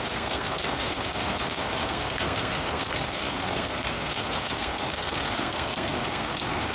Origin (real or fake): fake